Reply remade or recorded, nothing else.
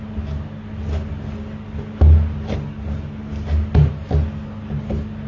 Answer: recorded